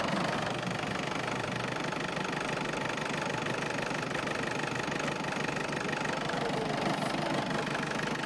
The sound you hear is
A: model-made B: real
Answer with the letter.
B